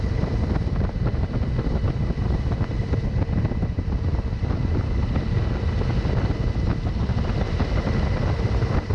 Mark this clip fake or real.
real